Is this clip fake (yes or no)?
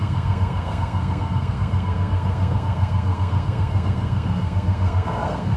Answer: yes